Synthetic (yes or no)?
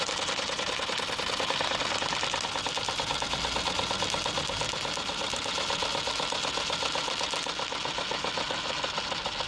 no